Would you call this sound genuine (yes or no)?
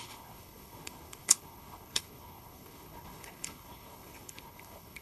no